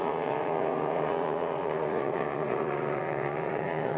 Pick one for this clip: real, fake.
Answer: fake